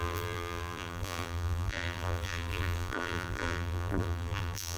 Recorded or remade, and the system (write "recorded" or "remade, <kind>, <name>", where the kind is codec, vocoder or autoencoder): remade, vocoder, BigVGAN v2